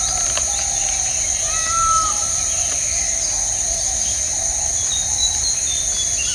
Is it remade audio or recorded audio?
recorded